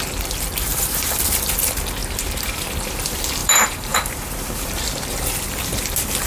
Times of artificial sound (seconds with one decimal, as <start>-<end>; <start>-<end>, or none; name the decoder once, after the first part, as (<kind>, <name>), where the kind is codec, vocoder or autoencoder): 0.7-1.2 (vocoder, BigVGAN v2); 2.0-2.6; 3.4-5.3